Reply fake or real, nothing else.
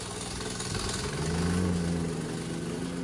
real